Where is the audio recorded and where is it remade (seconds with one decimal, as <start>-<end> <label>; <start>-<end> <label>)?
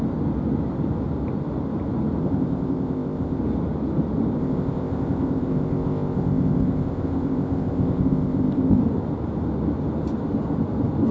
0.0-2.2 recorded; 2.2-3.4 remade; 3.4-4.4 recorded; 4.4-8.8 remade; 8.8-11.1 recorded